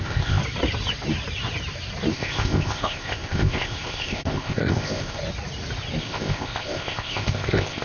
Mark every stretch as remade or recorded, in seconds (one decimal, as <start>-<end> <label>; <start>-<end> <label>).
0.0-0.4 remade; 0.4-2.1 recorded; 2.1-5.2 remade; 5.2-6.0 recorded; 6.0-7.8 remade